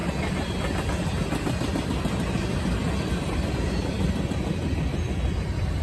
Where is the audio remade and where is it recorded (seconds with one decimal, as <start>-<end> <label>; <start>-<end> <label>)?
0.0-5.8 recorded